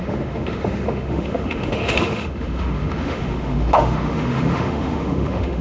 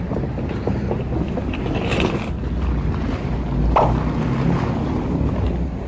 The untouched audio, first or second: second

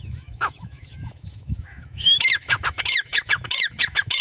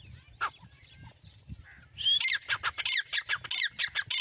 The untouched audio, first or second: second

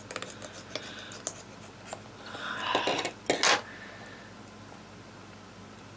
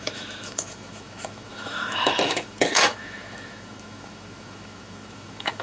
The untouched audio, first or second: first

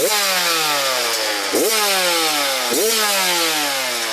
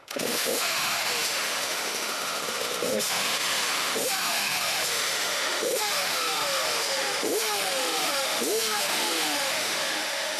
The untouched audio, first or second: first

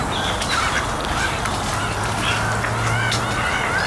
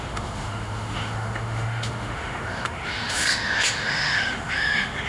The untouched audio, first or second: first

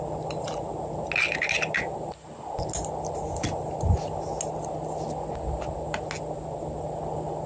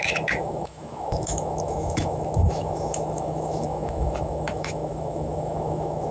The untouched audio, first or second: first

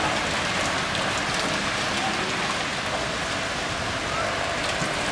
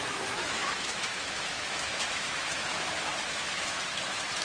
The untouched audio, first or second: first